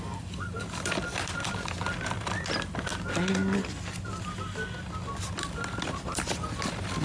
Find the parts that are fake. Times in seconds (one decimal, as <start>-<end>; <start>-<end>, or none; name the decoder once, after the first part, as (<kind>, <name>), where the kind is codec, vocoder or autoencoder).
0.0-2.9 (vocoder, BigVGAN v2); 5.3-7.0